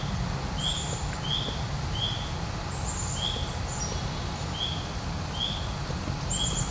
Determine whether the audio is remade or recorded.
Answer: recorded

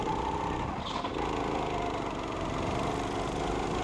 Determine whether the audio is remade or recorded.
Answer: recorded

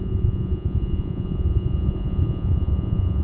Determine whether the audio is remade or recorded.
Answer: remade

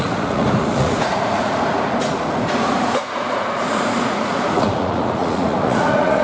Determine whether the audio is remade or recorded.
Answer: remade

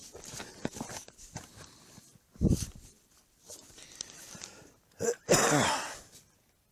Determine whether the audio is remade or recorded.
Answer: recorded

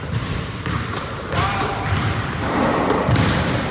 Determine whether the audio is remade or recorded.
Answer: remade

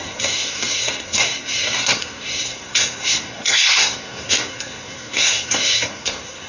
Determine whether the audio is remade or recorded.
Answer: remade